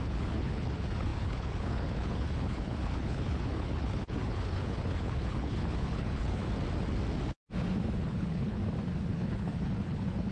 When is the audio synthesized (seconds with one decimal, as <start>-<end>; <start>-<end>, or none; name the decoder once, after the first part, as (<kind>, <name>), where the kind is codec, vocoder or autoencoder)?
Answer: 0.0-6.4 (codec, HILCodec); 8.0-8.6; 9.1-10.3